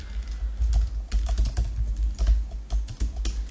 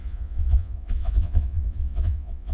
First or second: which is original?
first